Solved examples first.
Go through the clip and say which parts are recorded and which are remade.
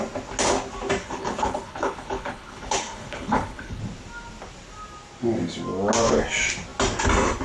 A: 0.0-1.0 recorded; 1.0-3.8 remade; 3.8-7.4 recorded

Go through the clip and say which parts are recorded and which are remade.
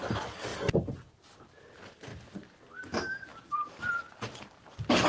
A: 0.0-3.3 recorded; 3.3-5.1 remade